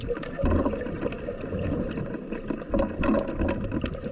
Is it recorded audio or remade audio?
recorded